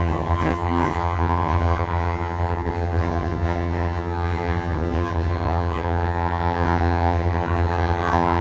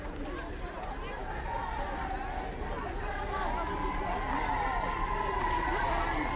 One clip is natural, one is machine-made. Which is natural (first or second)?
second